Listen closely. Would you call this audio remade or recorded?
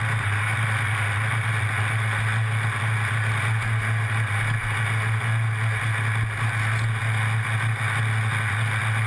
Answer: recorded